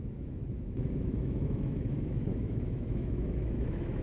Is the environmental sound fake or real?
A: fake